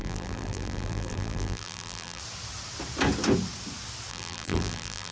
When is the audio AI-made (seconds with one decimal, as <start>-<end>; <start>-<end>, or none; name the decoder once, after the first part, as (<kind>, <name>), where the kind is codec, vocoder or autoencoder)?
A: 0.0-2.2 (vocoder, BigVGAN v2); 4.1-5.1